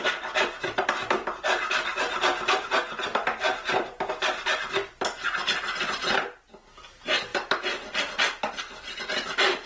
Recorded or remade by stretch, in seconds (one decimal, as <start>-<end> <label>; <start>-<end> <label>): 0.0-9.7 recorded